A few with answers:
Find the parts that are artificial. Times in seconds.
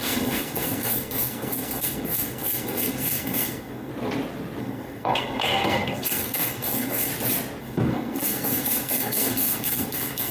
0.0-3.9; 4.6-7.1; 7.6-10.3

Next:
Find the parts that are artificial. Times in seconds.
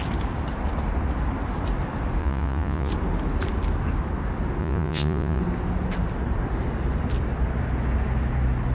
2.2-2.9; 4.6-5.4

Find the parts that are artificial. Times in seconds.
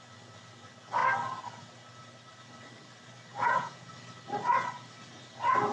3.3-3.9